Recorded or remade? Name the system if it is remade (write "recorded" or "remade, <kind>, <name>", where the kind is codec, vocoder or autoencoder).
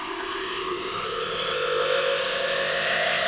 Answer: remade, codec, ZipCodec